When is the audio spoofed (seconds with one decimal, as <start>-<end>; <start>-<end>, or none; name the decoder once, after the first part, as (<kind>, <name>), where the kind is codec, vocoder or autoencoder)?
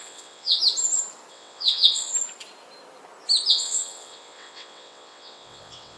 0.0-0.6 (vocoder, WaveNeXt); 1.3-2.1; 3.5-6.0